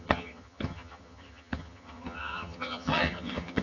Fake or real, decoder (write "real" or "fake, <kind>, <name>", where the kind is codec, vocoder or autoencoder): fake, vocoder, HiFi-GAN